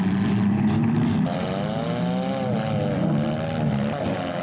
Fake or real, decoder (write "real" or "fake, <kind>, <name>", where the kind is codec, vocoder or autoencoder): real